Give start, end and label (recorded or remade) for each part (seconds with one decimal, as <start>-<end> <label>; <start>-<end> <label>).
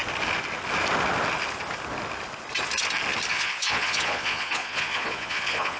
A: 0.0-3.3 recorded; 3.3-5.8 remade